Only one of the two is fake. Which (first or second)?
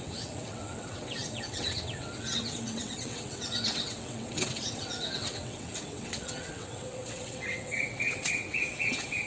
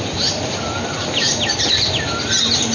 first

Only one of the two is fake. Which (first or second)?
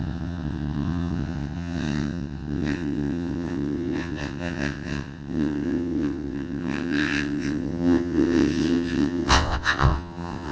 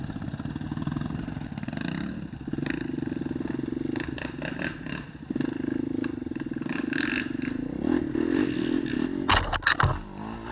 first